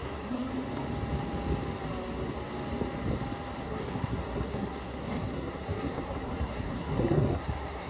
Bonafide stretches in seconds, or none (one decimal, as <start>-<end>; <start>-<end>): 0.5-3.6